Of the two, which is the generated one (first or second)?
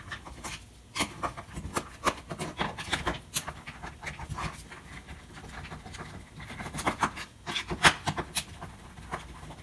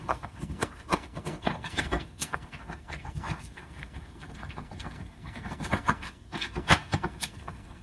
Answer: second